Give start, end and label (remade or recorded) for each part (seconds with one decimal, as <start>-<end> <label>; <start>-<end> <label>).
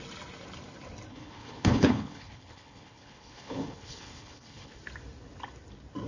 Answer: 0.0-1.1 recorded; 1.1-4.8 remade; 4.8-6.1 recorded